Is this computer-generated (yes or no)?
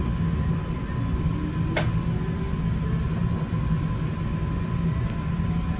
no